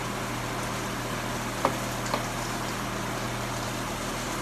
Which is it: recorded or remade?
recorded